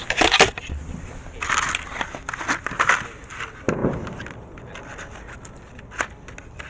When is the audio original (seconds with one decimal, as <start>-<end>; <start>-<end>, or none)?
0.0-6.7